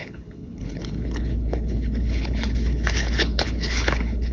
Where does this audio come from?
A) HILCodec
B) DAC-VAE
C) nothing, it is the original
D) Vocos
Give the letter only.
A